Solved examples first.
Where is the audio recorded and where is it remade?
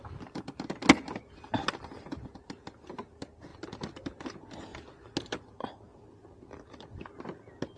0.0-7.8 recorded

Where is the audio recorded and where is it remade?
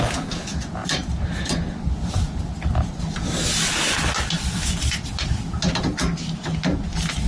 0.0-0.8 recorded; 0.8-3.0 remade; 3.0-7.3 recorded